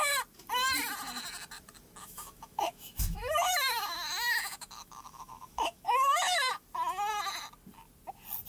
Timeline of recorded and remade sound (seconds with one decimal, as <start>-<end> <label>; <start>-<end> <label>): 0.0-2.0 recorded; 2.0-6.5 remade; 6.5-8.5 recorded